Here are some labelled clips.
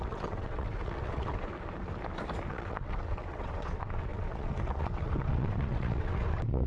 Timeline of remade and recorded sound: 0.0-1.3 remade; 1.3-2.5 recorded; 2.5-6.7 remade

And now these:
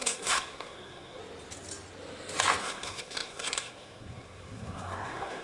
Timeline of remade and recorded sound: 0.0-1.2 remade; 1.2-2.6 recorded; 2.6-5.4 remade